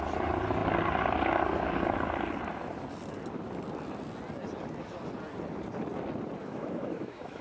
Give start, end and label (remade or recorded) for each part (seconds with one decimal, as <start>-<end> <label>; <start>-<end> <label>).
0.0-6.4 recorded; 6.4-7.4 remade